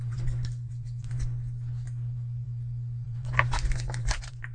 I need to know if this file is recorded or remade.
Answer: recorded